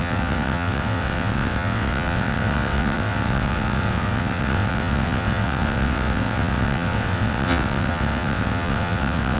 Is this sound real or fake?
fake